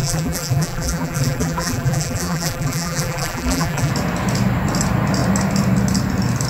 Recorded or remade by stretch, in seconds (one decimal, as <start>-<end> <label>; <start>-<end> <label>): 0.0-3.9 remade; 3.9-6.5 recorded